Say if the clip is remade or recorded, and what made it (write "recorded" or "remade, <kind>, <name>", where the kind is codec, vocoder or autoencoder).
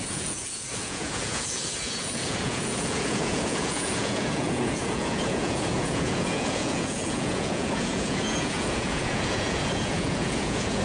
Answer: remade, vocoder, Vocos